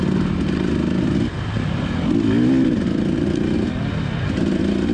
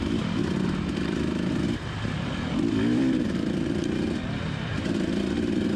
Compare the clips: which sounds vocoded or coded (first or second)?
second